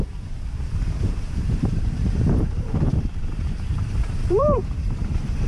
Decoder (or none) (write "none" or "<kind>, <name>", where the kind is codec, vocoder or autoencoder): vocoder, BigVGAN v2